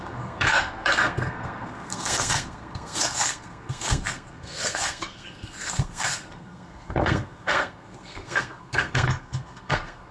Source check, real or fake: fake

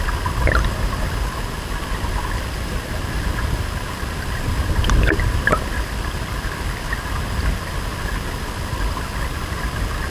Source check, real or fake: real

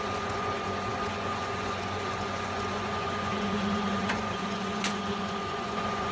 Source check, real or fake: fake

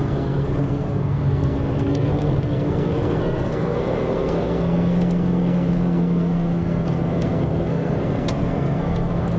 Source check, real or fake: fake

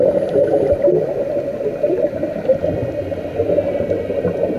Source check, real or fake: real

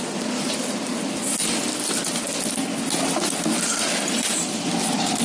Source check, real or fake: real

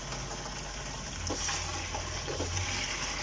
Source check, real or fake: real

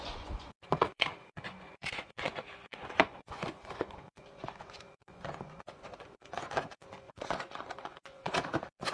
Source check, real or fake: fake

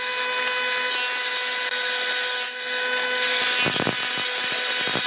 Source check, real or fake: real